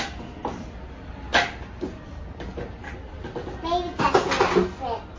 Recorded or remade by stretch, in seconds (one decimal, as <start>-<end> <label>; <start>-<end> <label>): 0.0-5.2 recorded